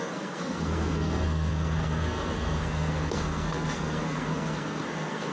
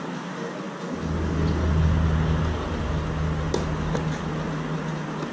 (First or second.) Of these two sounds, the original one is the second